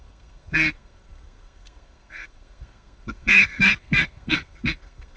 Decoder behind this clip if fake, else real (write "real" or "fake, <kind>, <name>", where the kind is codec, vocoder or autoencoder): fake, codec, SNAC